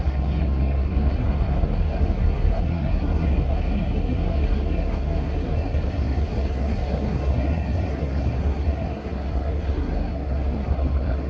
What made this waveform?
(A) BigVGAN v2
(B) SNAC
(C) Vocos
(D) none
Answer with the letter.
B